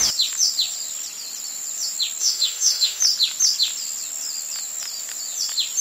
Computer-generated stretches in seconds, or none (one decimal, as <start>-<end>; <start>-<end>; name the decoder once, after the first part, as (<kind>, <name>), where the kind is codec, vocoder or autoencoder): 2.2-3.0 (autoencoder, DAC-VAE)